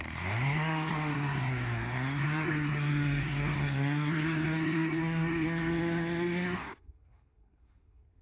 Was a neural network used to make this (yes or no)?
yes